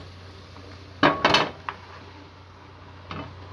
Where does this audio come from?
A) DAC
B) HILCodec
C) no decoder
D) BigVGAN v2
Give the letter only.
C